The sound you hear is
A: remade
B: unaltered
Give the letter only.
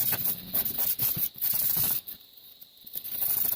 A